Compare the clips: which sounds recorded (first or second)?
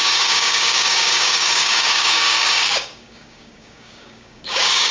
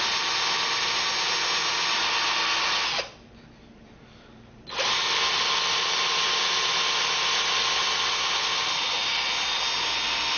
second